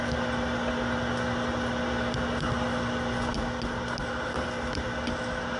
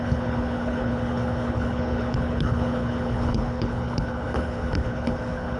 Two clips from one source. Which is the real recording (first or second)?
first